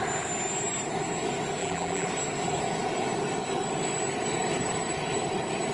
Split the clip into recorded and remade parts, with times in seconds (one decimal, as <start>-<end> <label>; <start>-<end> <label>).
0.0-1.6 recorded; 1.6-2.1 remade; 2.1-5.7 recorded